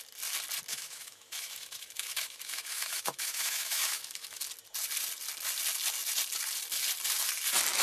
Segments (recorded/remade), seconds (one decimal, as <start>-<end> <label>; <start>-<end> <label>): 0.0-0.7 recorded; 0.7-4.4 remade; 4.4-7.8 recorded